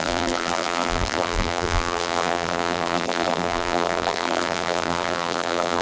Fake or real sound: fake